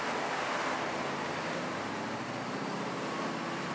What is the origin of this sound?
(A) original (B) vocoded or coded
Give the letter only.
A